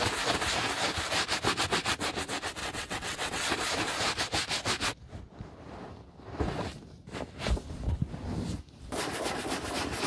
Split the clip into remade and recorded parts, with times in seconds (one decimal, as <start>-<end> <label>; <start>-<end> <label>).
0.0-2.6 recorded; 2.6-3.5 remade; 3.5-10.1 recorded